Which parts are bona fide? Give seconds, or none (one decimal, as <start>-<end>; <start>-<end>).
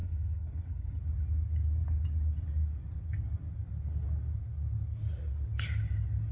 1.0-6.3